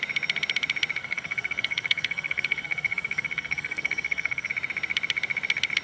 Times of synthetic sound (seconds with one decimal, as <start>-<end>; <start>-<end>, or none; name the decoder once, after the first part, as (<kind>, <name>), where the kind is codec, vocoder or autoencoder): 1.0-4.5 (codec, SNAC)